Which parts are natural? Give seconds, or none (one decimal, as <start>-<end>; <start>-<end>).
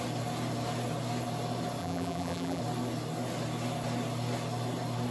0.0-1.8; 2.6-5.1